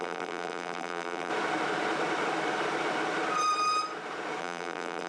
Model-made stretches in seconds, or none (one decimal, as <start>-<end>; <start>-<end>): 0.0-1.3; 4.4-5.1